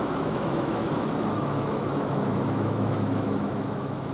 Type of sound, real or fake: fake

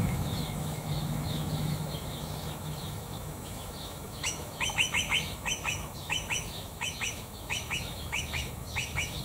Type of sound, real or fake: fake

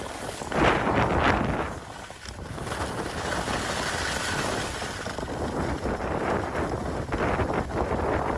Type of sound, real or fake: real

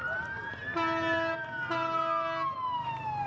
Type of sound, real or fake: real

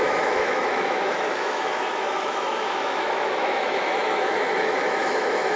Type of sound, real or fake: fake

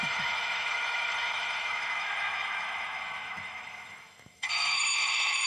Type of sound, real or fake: fake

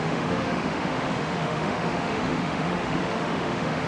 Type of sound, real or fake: fake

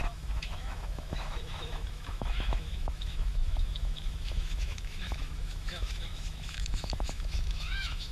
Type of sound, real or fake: fake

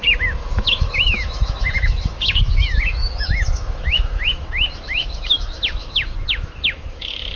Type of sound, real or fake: fake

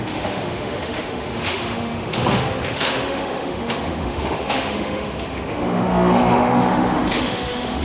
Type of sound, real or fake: fake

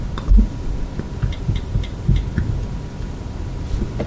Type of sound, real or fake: real